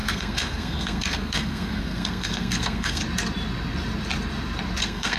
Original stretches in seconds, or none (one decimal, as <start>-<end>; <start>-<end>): 3.0-4.8